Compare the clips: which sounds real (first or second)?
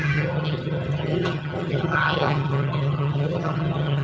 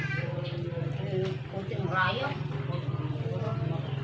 second